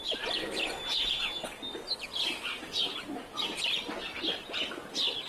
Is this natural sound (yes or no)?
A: yes